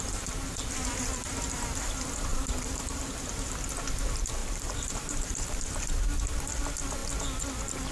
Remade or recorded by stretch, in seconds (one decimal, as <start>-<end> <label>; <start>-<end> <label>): 0.0-2.3 recorded; 2.3-3.1 remade; 3.1-4.4 recorded; 4.4-5.8 remade; 5.8-7.9 recorded